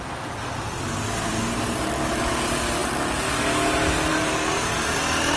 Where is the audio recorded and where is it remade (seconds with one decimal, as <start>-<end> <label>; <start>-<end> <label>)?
0.0-5.4 recorded